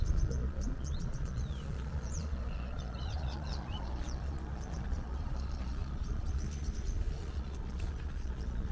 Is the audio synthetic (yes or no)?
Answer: yes